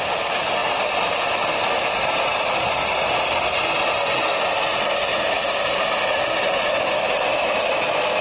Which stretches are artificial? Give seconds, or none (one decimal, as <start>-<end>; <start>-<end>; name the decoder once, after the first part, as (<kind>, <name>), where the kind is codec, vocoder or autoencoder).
0.6-4.0 (vocoder, BigVGAN v2)